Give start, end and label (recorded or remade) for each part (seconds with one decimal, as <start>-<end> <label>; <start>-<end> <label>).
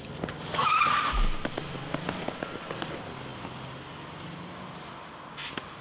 0.0-5.8 recorded